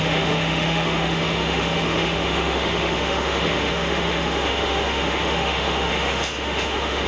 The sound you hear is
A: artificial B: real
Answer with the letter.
A